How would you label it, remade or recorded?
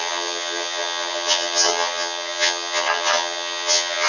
remade